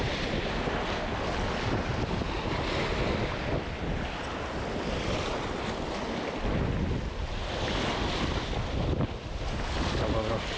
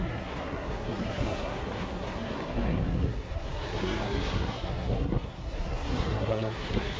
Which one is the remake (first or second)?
second